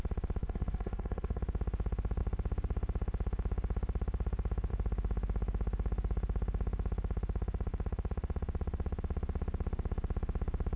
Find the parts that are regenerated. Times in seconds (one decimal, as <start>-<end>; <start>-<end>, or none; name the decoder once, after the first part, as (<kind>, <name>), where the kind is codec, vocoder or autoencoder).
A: 0.4-1.4 (codec, DAC)